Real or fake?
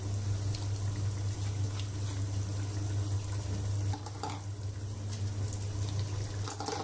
real